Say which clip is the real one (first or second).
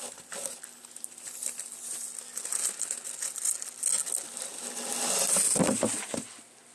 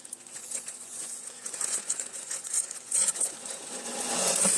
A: first